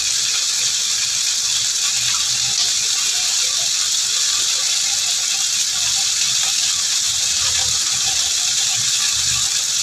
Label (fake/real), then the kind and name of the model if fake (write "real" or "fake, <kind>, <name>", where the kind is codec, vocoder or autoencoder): real